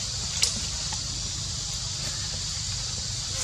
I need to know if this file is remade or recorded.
recorded